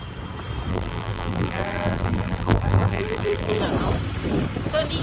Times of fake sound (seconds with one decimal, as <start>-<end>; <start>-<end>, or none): 0.7-3.6